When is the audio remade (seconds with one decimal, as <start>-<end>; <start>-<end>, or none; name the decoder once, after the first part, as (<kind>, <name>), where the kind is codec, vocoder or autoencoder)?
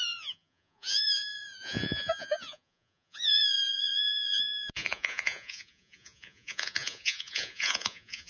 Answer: 0.0-8.3 (vocoder, Vocos)